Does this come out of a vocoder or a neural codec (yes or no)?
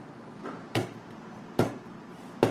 yes